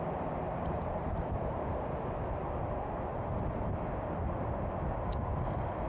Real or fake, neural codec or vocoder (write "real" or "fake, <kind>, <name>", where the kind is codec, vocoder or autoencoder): real